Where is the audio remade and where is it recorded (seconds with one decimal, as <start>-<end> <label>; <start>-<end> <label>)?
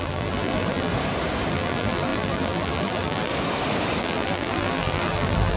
0.0-0.9 remade; 0.9-1.5 recorded; 1.5-3.3 remade; 3.3-4.0 recorded; 4.0-5.6 remade